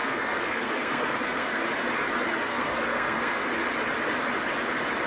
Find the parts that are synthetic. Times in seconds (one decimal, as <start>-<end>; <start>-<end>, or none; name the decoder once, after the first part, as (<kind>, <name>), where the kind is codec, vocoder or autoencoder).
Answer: 0.0-1.6 (codec, SNAC); 2.4-3.4